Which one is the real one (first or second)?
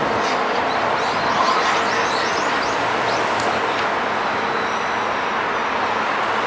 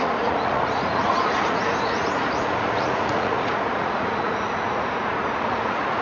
first